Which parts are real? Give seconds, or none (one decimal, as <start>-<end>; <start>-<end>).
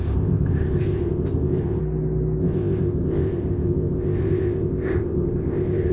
1.8-2.4